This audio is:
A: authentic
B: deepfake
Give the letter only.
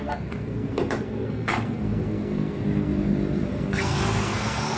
B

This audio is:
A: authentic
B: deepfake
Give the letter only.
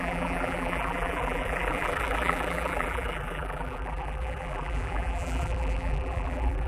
B